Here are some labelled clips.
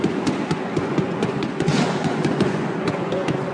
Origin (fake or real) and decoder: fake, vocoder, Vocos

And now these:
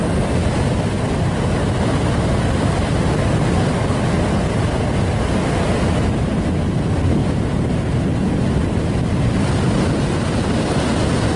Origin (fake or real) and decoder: real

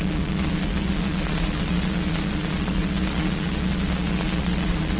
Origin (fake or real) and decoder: fake, vocoder, Vocos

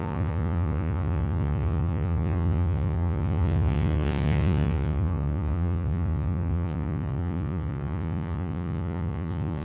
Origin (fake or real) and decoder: fake, vocoder, Vocos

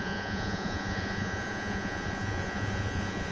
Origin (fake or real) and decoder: fake, vocoder, Vocos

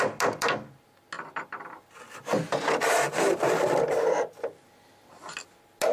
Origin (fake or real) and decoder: real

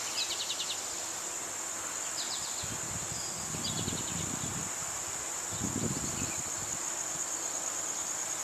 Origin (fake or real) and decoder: real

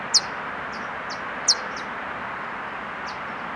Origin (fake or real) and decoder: real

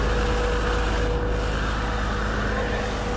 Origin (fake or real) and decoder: real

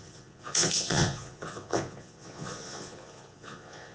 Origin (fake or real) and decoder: fake, vocoder, Vocos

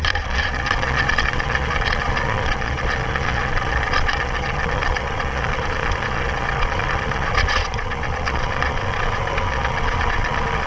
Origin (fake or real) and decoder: fake, vocoder, Vocos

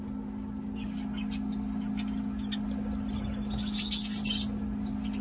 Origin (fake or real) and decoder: real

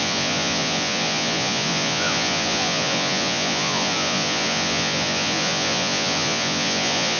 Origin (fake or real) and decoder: fake, vocoder, Vocos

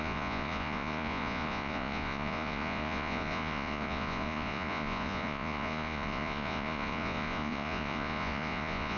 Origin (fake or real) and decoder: fake, vocoder, Vocos